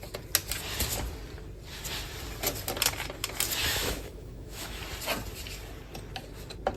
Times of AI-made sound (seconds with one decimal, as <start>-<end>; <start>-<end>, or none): 3.6-4.8